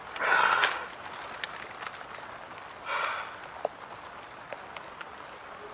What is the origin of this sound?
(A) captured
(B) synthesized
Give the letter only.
A